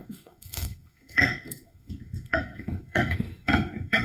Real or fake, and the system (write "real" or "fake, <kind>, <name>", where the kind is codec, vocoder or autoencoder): fake, codec, SNAC